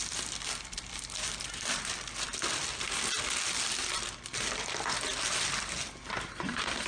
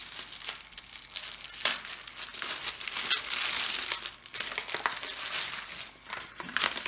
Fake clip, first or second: first